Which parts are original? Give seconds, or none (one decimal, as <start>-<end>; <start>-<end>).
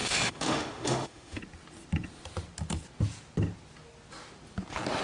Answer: 1.4-5.0